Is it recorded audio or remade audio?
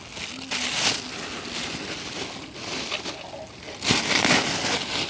recorded